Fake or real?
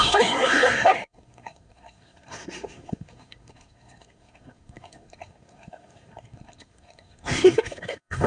fake